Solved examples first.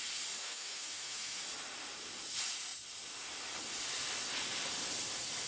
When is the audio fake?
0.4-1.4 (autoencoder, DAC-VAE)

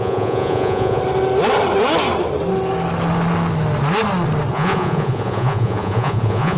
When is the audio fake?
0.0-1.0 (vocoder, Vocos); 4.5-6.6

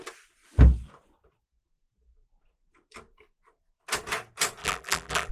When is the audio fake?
4.6-5.3 (vocoder, BigVGAN v2)

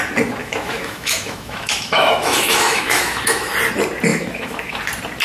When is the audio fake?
0.4-3.5 (autoencoder, DAC-VAE); 4.1-4.8

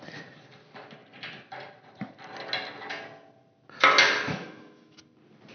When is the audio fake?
4.3-5.0 (autoencoder, DAC-VAE)

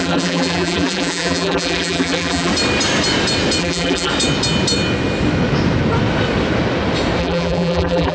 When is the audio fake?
0.0-2.5 (vocoder, BigVGAN v2); 3.6-4.1; 7.2-8.1